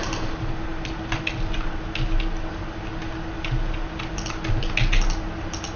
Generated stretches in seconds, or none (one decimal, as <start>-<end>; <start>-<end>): none